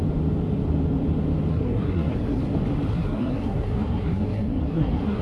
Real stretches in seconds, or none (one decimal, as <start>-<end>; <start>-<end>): 0.0-1.5; 2.4-2.9